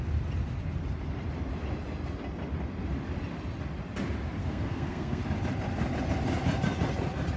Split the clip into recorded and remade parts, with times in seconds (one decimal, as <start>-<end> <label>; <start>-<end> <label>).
0.0-4.4 recorded; 4.4-5.2 remade; 5.2-7.4 recorded